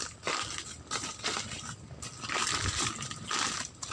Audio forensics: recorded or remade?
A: recorded